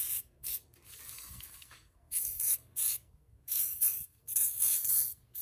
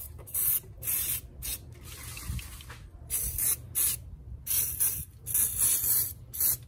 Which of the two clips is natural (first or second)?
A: second